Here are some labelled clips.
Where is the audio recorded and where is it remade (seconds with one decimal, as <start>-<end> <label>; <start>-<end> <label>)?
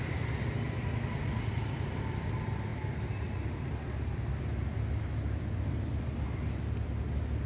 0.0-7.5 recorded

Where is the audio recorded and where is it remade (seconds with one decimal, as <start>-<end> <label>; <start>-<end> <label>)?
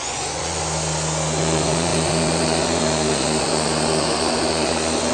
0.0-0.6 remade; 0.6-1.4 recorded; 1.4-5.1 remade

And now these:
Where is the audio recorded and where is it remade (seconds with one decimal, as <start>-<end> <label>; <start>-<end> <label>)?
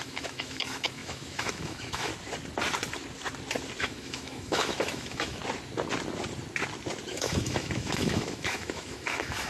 0.0-2.1 remade; 2.1-3.8 recorded; 3.8-5.4 remade; 5.4-7.1 recorded; 7.1-9.5 remade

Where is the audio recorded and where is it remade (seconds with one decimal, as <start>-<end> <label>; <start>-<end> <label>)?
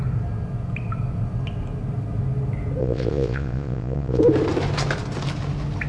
0.0-2.8 recorded; 2.8-4.2 remade; 4.2-5.9 recorded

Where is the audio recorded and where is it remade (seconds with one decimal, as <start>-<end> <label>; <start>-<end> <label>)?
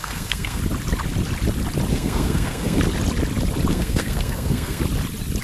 0.0-0.6 remade; 0.6-1.9 recorded; 1.9-2.8 remade; 2.8-3.7 recorded; 3.7-4.8 remade; 4.8-5.4 recorded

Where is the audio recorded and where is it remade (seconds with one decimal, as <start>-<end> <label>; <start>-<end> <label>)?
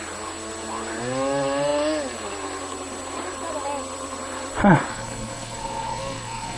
0.0-4.9 recorded; 4.9-6.6 remade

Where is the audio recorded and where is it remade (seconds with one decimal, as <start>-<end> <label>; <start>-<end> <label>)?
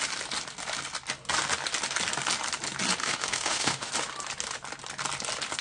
0.0-3.0 recorded; 3.0-3.9 remade; 3.9-5.6 recorded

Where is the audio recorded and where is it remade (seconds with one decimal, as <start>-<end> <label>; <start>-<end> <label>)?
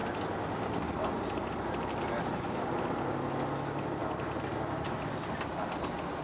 0.0-6.2 recorded